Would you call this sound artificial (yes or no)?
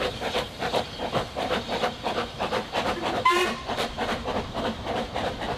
yes